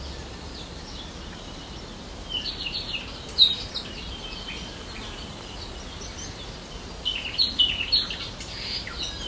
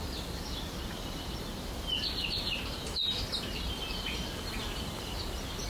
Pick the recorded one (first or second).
first